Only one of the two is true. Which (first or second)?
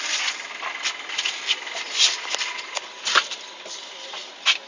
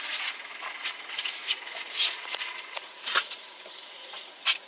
first